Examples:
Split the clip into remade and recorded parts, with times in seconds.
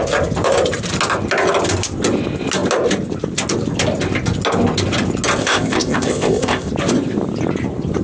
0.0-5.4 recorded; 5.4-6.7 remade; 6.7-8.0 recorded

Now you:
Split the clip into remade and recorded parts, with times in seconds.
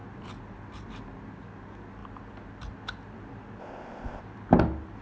0.0-3.6 recorded; 3.6-4.2 remade; 4.2-5.0 recorded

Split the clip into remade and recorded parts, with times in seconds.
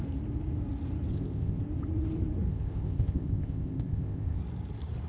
0.0-1.1 recorded; 1.1-1.6 remade; 1.6-2.5 recorded; 2.5-4.4 remade; 4.4-5.1 recorded